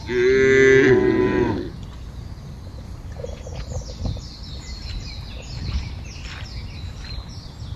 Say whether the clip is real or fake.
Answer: real